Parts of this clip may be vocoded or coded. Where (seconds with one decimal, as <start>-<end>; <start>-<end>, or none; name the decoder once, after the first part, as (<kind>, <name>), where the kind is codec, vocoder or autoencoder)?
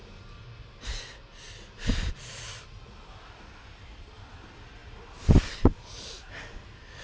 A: none